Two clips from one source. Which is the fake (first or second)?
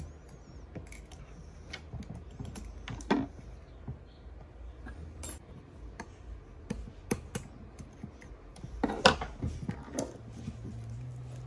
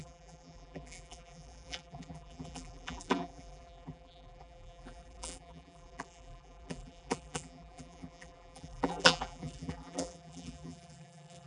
second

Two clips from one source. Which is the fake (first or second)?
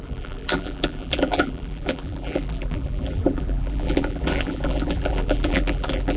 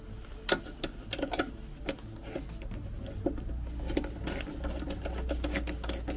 first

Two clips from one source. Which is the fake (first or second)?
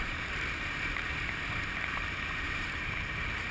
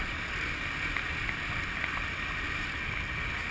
first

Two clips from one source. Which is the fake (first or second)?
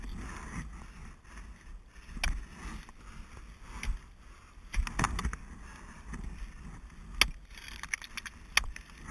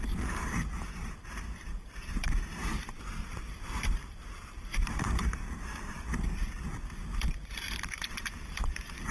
second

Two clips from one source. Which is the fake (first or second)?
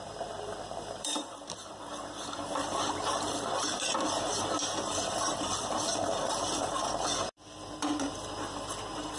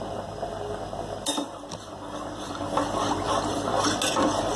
first